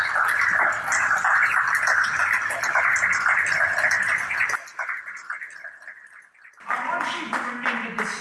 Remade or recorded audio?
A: recorded